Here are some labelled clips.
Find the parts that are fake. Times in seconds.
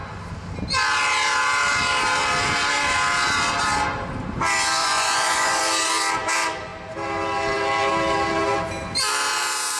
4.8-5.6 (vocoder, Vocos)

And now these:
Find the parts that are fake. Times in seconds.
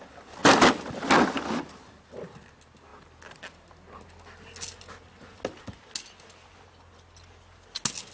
none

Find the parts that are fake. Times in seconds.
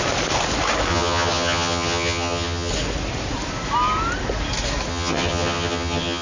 0.9-2.7 (vocoder, HiFi-GAN); 4.9-6.2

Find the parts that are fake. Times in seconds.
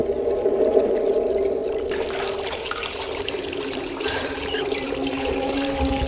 1.1-6.1 (vocoder, BigVGAN v2)